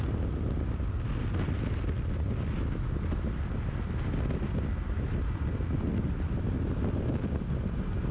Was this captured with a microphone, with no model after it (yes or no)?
yes